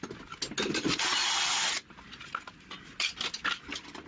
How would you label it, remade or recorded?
recorded